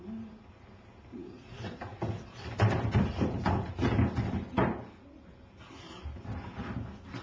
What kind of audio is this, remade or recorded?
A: recorded